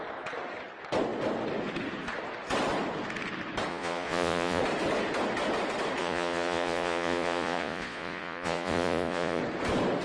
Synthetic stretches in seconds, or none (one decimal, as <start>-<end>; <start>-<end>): 3.7-4.6; 6.0-9.4